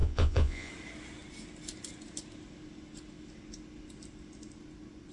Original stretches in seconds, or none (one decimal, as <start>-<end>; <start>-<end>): 0.7-5.1